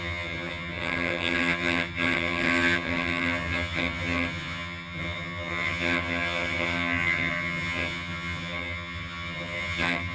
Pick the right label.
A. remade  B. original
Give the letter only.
A